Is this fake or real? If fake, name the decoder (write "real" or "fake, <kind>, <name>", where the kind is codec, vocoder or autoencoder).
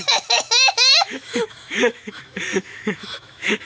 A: fake, autoencoder, DAC-VAE